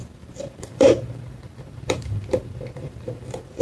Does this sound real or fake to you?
fake